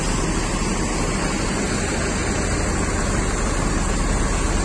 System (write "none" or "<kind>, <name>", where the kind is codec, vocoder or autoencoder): none